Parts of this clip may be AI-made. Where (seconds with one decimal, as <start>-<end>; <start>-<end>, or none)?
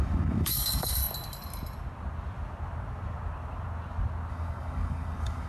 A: 0.0-1.0; 4.3-5.5